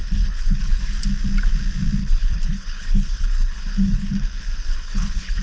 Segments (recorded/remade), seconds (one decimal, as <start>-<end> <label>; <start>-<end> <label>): 0.0-0.8 remade; 0.8-2.0 recorded; 2.0-5.4 remade